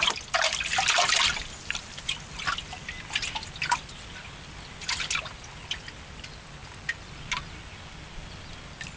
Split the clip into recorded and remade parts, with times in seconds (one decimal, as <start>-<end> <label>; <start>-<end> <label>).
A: 0.0-9.0 recorded